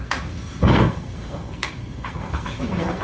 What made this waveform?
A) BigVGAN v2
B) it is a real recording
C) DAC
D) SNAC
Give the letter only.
D